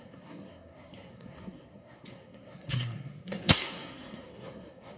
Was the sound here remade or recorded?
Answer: remade